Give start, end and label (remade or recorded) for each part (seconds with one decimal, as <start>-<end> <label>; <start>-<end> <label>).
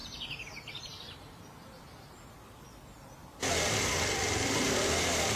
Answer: 0.0-2.3 remade; 2.3-5.4 recorded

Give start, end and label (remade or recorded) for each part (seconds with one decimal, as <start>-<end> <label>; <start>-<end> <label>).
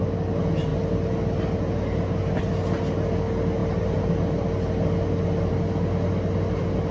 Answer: 0.0-6.9 recorded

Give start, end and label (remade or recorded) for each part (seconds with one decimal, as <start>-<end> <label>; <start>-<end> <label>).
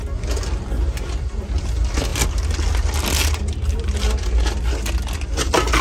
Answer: 0.0-5.8 recorded